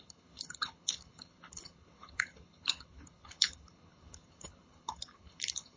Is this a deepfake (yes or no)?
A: yes